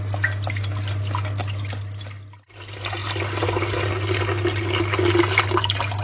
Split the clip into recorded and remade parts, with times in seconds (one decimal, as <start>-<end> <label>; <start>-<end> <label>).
0.0-6.0 recorded